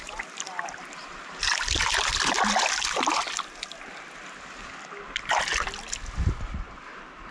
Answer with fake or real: real